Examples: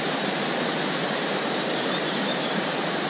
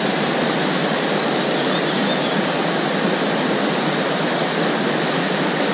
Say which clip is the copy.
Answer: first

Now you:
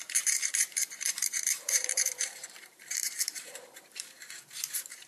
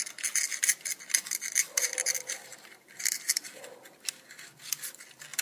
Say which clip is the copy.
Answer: first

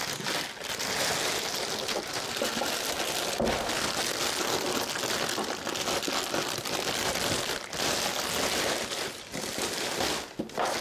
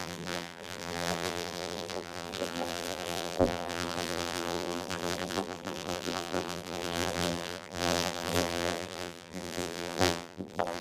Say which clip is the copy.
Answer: second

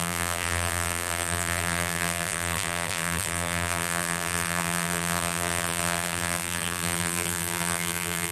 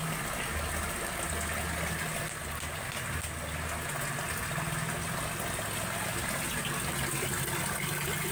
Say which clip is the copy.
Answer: first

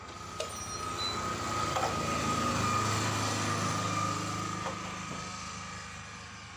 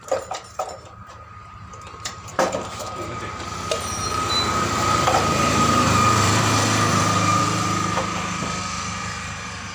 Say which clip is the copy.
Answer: second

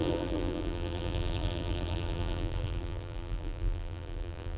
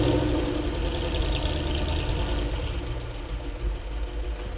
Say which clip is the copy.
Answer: first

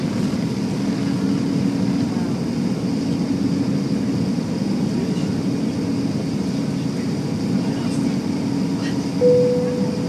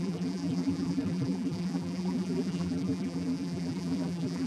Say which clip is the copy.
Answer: second